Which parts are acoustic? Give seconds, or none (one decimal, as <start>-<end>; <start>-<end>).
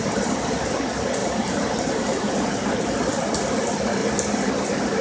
0.0-1.2; 2.7-4.0; 4.5-5.0